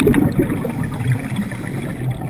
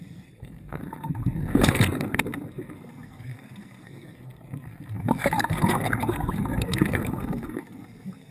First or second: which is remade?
second